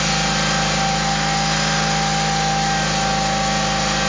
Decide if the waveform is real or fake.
real